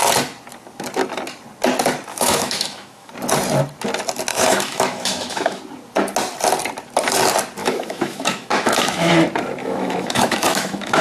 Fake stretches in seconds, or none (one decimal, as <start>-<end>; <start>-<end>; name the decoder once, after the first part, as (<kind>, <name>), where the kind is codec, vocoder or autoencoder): 2.1-3.1 (autoencoder, DAC-VAE); 4.3-5.6; 7.6-9.1; 9.6-11.0